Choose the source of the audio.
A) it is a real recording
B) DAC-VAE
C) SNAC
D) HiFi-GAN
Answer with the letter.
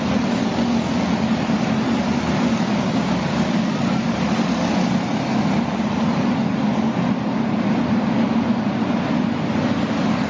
A